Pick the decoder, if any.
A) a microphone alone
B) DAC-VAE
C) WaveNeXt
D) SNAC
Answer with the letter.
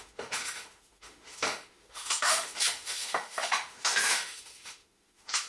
B